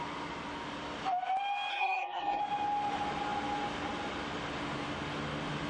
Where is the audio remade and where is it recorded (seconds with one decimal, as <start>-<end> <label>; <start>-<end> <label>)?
0.0-1.7 recorded; 1.7-2.4 remade; 2.4-5.7 recorded

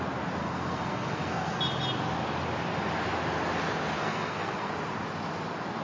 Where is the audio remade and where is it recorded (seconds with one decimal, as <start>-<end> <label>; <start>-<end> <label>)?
0.0-0.4 recorded; 0.4-1.6 remade; 1.6-4.0 recorded; 4.0-4.7 remade; 4.7-5.8 recorded